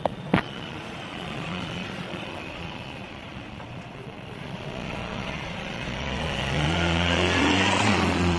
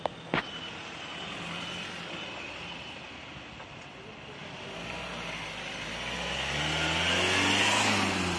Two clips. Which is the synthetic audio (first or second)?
first